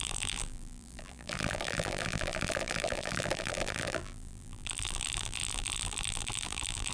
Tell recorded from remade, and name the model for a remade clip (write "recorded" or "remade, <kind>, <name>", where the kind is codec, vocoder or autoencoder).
remade, vocoder, BigVGAN v2